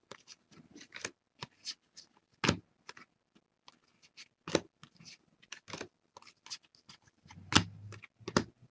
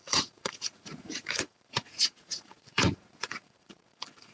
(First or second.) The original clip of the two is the first